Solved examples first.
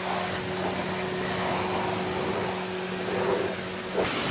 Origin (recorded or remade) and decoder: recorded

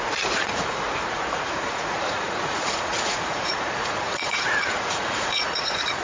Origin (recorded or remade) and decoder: remade, vocoder, Vocos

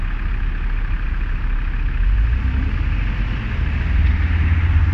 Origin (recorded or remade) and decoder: recorded